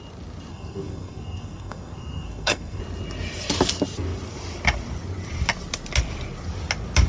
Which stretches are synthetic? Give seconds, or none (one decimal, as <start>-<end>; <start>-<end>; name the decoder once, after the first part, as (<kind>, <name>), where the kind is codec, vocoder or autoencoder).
0.5-2.8 (codec, SNAC)